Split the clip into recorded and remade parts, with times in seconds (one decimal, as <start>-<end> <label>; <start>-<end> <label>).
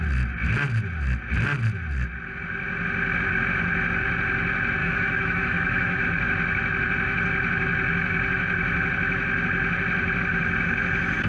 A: 0.0-4.8 recorded; 4.8-6.0 remade; 6.0-11.3 recorded